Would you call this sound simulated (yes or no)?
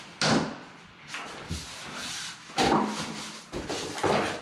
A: no